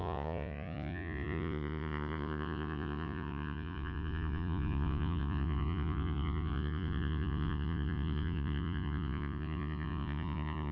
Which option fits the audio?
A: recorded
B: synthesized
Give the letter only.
B